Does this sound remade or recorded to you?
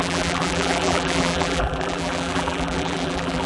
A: remade